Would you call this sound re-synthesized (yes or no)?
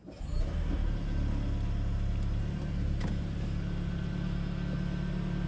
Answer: no